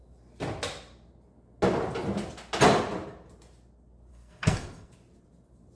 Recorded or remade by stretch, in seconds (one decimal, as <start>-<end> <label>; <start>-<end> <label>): 0.0-4.1 recorded; 4.1-4.9 remade; 4.9-5.8 recorded